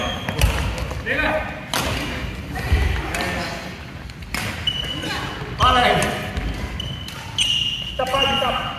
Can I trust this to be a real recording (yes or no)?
yes